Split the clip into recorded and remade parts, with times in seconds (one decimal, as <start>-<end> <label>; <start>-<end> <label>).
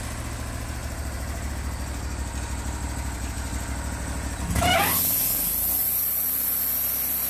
0.0-0.8 recorded; 0.8-1.5 remade; 1.5-5.8 recorded; 5.8-6.6 remade; 6.6-7.3 recorded